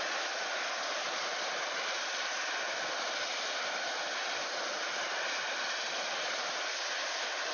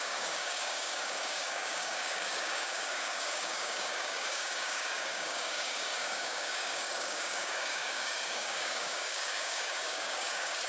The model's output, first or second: second